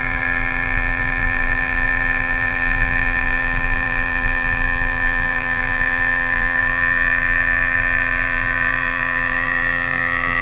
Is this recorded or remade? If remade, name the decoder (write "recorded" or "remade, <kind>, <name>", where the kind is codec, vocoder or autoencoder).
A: remade, vocoder, BigVGAN v2